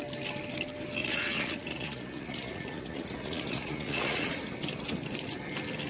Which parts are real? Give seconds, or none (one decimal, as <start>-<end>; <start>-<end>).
0.0-1.0; 4.4-5.9